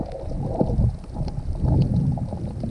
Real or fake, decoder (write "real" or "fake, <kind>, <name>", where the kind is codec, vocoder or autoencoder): real